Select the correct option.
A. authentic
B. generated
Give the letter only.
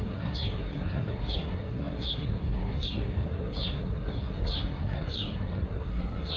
B